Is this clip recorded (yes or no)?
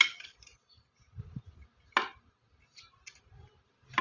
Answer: yes